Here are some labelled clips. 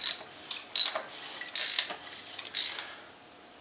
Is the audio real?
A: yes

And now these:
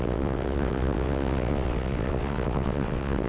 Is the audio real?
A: no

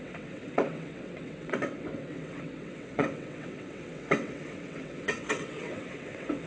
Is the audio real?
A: no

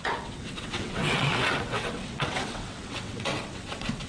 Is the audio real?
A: no